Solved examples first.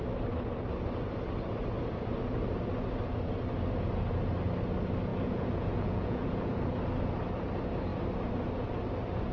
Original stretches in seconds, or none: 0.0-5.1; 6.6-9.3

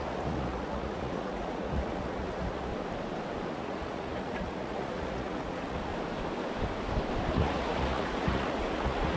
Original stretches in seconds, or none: 2.7-3.5; 5.9-7.3

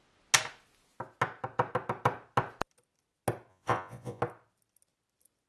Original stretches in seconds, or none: 0.0-3.5; 4.2-5.5

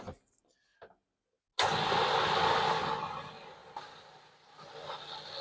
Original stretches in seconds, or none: 0.0-5.4

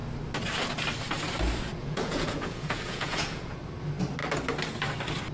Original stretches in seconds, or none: 0.0-1.7; 3.6-5.3

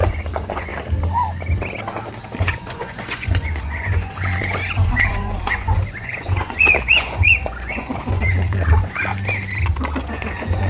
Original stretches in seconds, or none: 0.7-2.4; 9.1-10.0

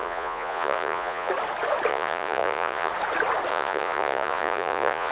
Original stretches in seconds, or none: 1.3-1.9; 2.9-3.5

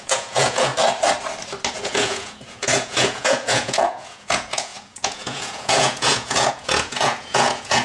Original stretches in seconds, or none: 0.7-1.7